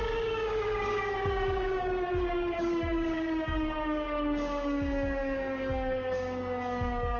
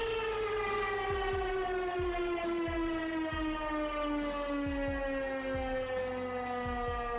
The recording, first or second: second